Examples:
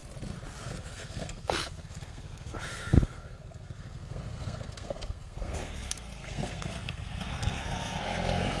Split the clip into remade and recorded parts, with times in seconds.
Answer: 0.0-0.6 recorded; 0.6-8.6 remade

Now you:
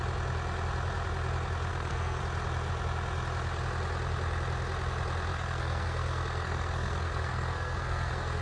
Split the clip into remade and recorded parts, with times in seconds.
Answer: 0.0-1.7 recorded; 1.7-2.2 remade; 2.2-5.3 recorded; 5.3-8.4 remade

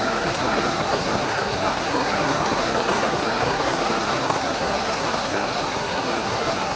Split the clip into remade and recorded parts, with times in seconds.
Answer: 0.0-6.8 remade

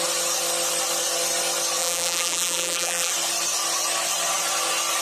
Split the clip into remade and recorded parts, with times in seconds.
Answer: 0.0-1.8 recorded; 1.8-3.1 remade; 3.1-5.0 recorded